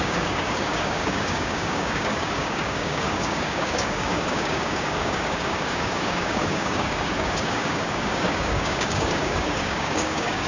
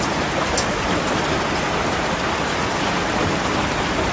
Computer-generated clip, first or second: first